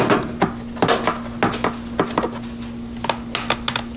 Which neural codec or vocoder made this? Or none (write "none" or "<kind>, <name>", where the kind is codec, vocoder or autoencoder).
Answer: none